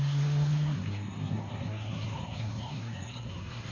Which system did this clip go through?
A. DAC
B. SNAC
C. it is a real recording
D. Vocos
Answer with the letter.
B